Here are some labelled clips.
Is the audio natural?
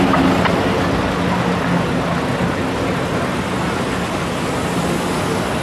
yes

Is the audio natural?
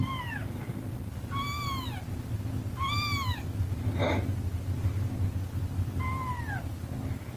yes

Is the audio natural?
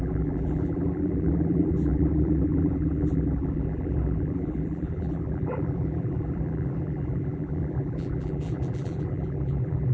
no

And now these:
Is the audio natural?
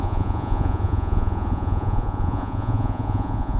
no